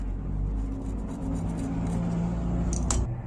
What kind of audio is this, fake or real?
real